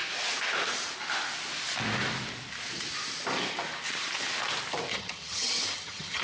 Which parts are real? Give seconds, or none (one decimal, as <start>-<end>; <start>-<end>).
0.0-4.9